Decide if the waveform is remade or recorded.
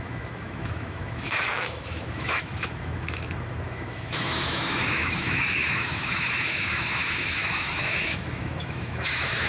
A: remade